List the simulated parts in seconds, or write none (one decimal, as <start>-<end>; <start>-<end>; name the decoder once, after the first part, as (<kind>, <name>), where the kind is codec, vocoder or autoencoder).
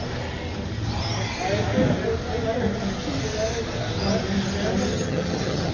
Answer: 4.9-5.7 (vocoder, HiFi-GAN)